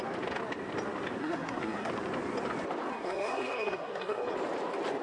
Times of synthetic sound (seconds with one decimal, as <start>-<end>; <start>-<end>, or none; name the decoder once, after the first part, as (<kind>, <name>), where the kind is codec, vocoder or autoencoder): 1.2-1.9 (codec, SNAC); 2.9-4.3